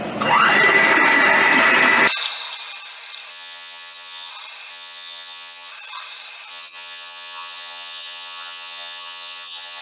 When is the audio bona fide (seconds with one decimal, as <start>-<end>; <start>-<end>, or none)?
0.0-3.3; 4.3-4.7; 5.7-6.5